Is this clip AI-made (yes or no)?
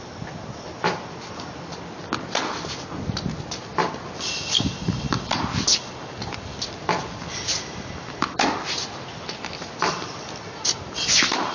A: no